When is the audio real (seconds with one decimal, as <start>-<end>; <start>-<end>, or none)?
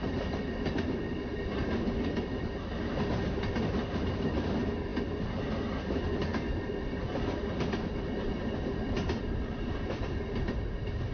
0.0-11.1